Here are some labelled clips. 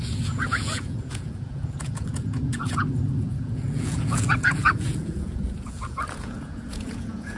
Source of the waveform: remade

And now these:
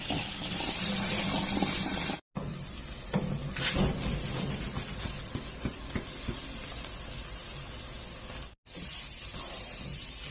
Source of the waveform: recorded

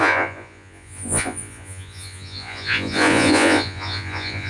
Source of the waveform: remade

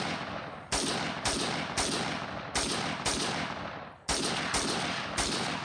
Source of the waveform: recorded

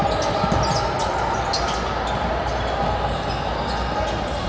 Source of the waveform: recorded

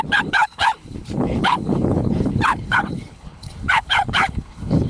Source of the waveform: remade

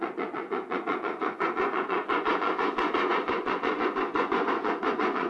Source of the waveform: remade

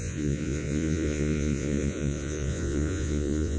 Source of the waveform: remade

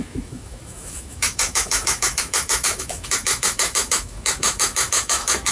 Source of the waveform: remade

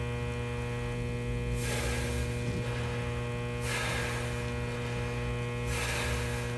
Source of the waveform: recorded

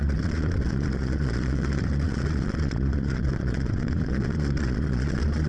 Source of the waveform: remade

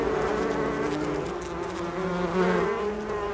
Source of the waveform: recorded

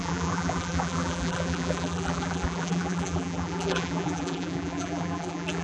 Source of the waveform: remade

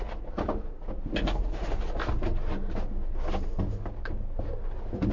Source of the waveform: recorded